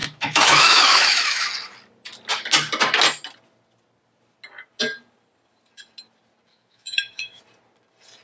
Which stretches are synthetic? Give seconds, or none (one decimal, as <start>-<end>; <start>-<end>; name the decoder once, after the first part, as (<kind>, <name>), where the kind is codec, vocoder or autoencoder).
0.0-1.5 (autoencoder, DAC-VAE); 6.5-7.4